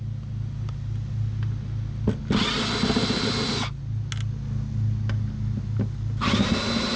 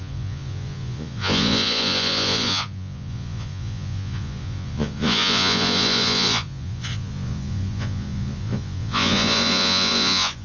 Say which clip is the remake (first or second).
second